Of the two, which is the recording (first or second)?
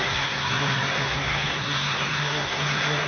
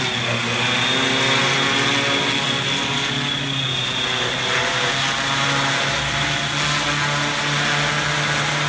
second